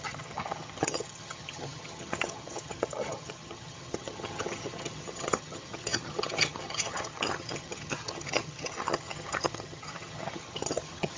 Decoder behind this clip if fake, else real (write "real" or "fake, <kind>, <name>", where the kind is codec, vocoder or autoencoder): fake, vocoder, HiFi-GAN